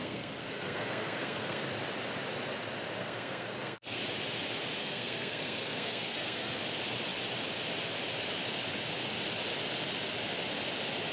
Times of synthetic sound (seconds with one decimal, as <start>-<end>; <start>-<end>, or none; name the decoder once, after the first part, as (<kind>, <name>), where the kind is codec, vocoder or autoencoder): 0.0-1.6 (codec, SNAC); 3.0-4.0; 4.8-6.6